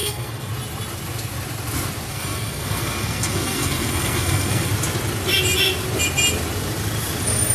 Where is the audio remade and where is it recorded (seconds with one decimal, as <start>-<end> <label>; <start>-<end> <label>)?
0.0-0.5 remade; 0.5-2.1 recorded; 2.1-4.7 remade; 4.7-7.5 recorded